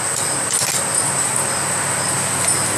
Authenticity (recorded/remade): recorded